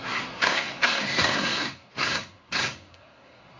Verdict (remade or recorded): remade